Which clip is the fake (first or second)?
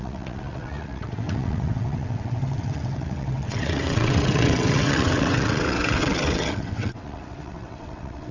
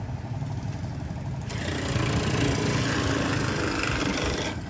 first